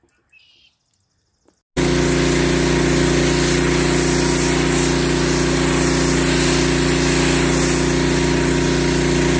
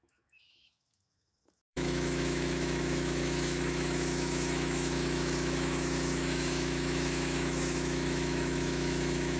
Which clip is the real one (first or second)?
first